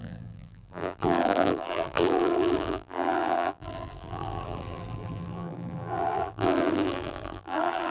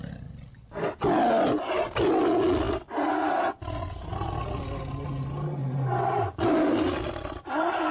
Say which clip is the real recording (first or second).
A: second